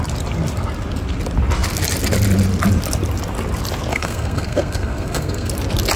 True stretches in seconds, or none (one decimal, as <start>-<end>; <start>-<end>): 0.0-3.9; 5.5-6.0